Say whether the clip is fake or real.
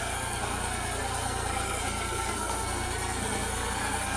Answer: fake